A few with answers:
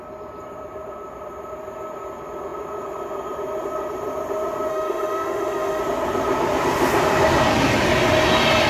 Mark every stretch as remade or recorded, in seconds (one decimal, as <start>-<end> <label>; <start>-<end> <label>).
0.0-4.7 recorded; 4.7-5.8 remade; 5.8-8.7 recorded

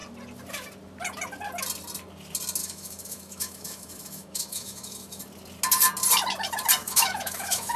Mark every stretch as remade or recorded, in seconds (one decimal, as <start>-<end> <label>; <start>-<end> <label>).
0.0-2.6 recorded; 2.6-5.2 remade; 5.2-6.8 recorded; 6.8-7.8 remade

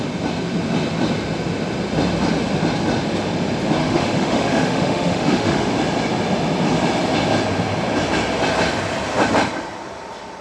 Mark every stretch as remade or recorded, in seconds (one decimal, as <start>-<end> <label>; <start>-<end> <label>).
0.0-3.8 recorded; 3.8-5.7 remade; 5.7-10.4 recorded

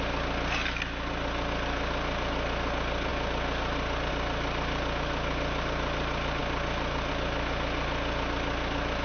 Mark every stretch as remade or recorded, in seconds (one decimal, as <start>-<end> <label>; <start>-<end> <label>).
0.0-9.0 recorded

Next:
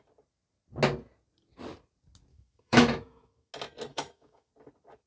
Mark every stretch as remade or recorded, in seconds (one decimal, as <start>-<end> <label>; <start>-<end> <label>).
0.0-2.3 recorded; 2.3-3.5 remade; 3.5-3.9 recorded; 3.9-4.5 remade; 4.5-5.1 recorded